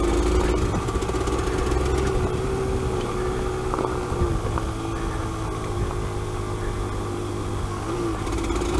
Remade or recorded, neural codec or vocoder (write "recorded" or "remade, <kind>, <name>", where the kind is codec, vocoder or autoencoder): recorded